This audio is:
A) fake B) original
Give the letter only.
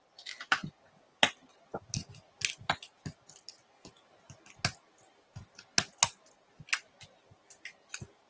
B